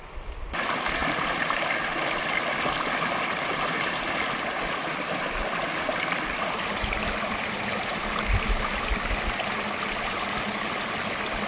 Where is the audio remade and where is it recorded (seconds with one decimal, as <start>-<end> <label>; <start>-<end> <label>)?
0.0-1.0 recorded; 1.0-1.8 remade; 1.8-11.5 recorded